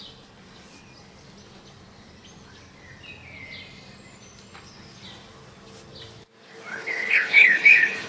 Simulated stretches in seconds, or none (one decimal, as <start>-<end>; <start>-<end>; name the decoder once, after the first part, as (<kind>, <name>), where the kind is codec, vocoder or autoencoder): 6.7-8.1 (codec, HILCodec)